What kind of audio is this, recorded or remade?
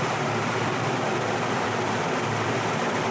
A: remade